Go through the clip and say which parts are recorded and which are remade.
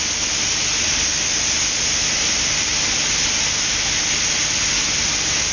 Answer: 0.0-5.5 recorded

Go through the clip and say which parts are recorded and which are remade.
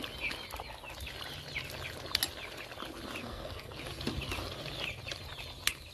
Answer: 0.0-3.2 recorded; 3.2-3.8 remade; 3.8-5.9 recorded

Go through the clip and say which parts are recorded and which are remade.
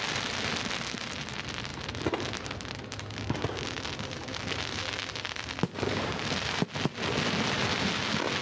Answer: 0.0-8.4 recorded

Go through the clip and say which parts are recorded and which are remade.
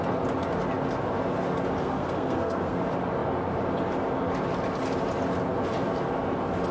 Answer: 0.0-1.8 recorded; 1.8-2.8 remade; 2.8-6.7 recorded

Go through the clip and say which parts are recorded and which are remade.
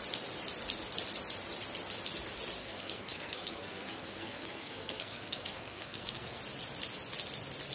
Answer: 0.0-2.6 recorded; 2.6-6.4 remade; 6.4-7.7 recorded